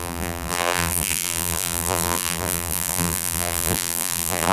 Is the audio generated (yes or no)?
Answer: yes